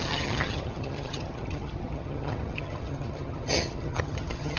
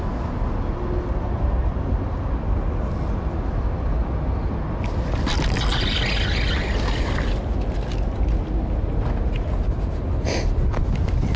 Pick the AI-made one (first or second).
first